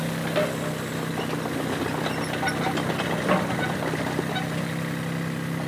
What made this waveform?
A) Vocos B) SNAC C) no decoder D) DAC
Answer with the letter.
C